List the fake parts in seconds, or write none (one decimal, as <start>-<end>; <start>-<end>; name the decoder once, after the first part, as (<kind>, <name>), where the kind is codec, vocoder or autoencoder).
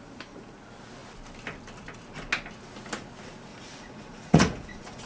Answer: 3.5-5.1 (vocoder, Vocos)